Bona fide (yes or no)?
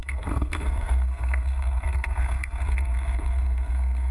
no